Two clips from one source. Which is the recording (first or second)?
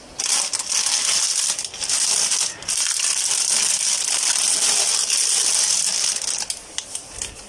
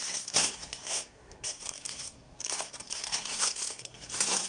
first